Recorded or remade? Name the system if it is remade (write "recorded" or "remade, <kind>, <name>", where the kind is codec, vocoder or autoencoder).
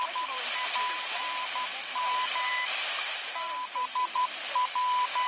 remade, vocoder, BigVGAN v2